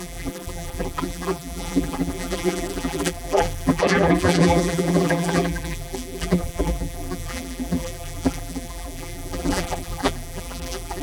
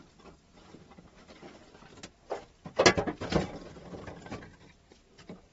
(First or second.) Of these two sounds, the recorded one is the second